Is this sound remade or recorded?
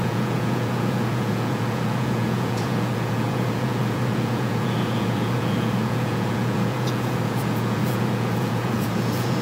remade